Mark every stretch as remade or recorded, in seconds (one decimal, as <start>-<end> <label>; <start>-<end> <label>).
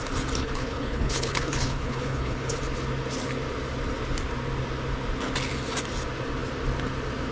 0.0-0.4 recorded; 0.4-2.6 remade; 2.6-7.3 recorded